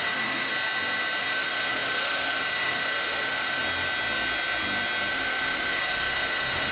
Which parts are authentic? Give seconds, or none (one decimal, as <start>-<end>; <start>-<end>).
0.5-1.2; 3.6-5.1